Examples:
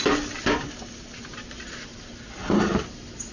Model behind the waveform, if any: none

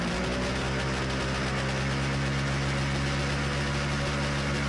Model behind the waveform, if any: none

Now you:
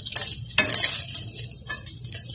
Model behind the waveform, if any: none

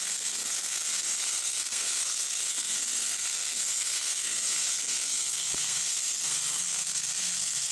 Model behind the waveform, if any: codec, SNAC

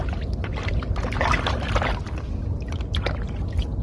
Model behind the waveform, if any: none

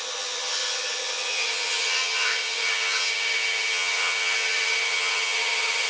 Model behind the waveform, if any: vocoder, HiFi-GAN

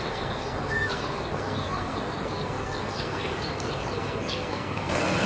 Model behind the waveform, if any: codec, SNAC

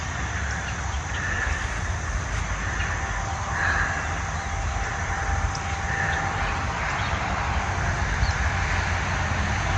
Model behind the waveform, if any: none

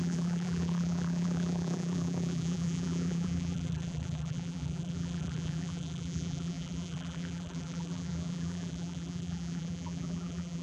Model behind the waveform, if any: vocoder, BigVGAN v2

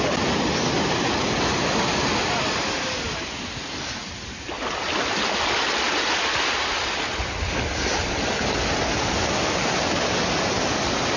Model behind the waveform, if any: none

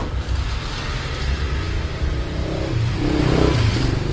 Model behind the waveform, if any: none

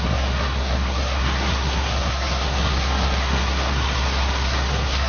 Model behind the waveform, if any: codec, SNAC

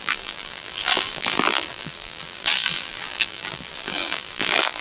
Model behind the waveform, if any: vocoder, BigVGAN v2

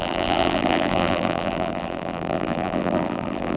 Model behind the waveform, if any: vocoder, BigVGAN v2